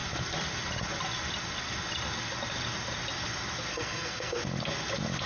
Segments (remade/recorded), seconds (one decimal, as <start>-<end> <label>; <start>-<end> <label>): 0.0-3.7 recorded; 3.7-4.4 remade; 4.4-5.3 recorded